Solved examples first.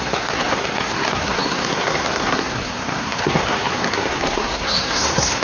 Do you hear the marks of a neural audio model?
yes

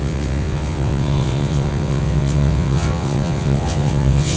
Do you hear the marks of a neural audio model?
yes